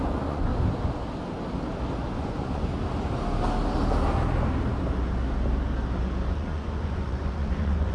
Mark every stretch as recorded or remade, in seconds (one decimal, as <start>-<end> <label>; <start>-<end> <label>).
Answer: 0.0-0.5 remade; 0.5-2.1 recorded; 2.1-2.7 remade; 2.7-6.3 recorded; 6.3-7.9 remade